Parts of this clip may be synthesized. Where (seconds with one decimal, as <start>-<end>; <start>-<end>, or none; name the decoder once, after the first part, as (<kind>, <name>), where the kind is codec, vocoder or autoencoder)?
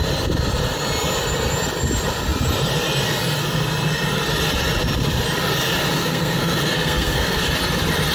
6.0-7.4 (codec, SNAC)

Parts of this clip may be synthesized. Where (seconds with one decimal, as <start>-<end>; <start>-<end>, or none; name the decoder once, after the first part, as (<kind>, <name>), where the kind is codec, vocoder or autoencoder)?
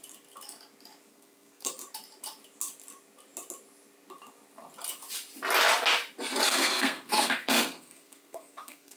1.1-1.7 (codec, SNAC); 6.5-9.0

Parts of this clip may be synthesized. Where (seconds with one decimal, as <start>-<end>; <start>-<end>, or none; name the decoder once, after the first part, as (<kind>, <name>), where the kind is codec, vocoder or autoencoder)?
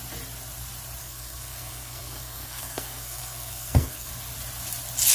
1.0-4.1 (codec, SNAC)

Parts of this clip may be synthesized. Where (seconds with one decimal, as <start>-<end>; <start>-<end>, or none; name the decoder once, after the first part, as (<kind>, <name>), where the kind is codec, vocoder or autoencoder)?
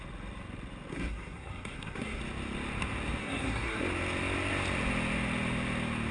0.9-2.2 (codec, SNAC); 3.2-3.8